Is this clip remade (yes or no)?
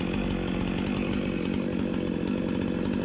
no